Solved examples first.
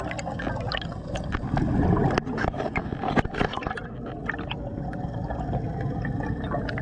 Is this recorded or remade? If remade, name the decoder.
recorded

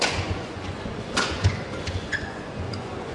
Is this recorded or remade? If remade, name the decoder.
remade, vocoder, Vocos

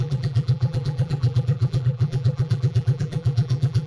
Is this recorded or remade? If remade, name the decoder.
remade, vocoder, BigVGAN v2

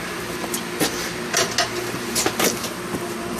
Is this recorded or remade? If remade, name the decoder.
recorded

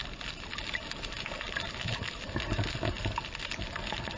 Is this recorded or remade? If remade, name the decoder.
recorded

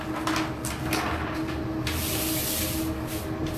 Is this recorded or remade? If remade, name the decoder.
recorded